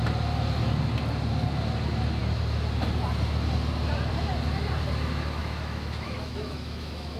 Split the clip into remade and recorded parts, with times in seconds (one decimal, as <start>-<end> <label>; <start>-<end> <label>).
0.0-5.4 recorded; 5.4-7.2 remade